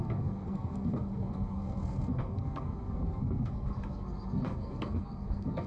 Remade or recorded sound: remade